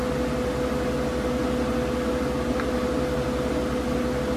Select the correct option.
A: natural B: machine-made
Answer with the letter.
A